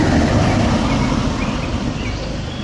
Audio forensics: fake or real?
real